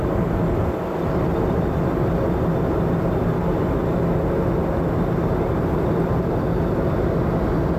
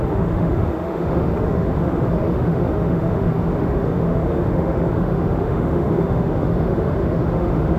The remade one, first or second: second